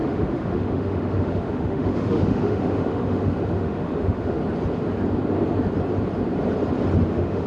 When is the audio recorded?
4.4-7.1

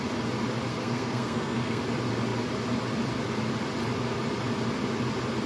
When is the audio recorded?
0.0-0.7; 1.8-5.5

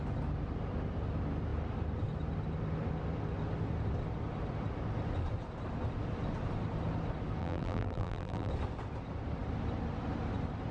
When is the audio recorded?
0.0-7.4; 8.5-10.7

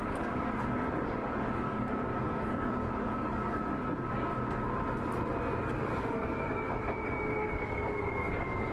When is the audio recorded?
4.3-5.6